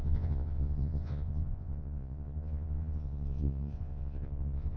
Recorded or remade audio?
remade